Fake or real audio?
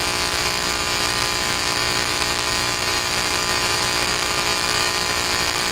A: fake